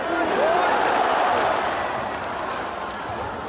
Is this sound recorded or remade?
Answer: recorded